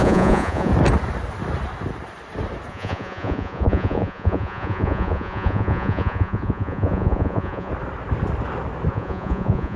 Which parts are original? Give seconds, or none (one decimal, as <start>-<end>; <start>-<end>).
0.7-2.7; 7.7-8.9